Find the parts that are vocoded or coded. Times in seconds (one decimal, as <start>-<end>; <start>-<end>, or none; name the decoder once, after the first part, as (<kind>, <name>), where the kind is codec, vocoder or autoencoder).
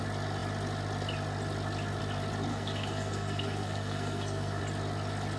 2.5-4.6 (codec, SNAC)